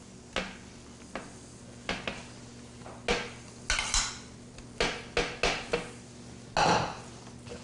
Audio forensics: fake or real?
real